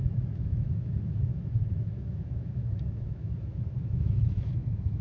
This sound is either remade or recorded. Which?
remade